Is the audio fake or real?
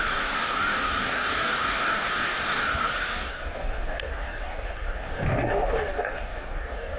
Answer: fake